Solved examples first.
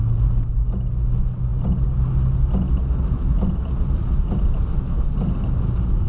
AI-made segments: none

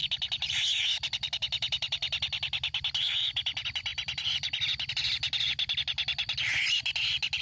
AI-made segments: 3.9-4.9

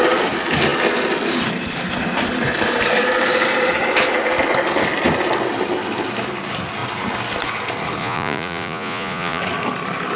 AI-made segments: 8.0-9.4

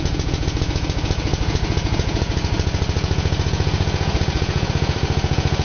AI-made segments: 0.0-5.6

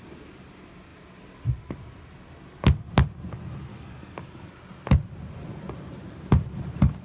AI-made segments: 3.7-4.5

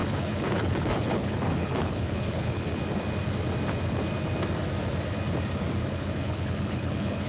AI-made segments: 0.0-2.7; 5.8-7.3

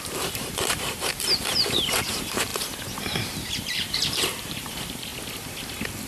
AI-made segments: 0.0-5.1